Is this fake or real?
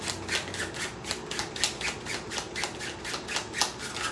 real